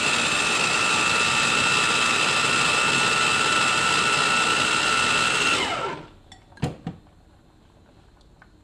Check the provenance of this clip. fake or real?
real